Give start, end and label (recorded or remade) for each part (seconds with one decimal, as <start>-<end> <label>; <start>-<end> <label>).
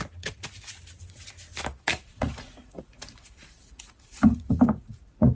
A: 0.0-1.9 recorded; 1.9-5.3 remade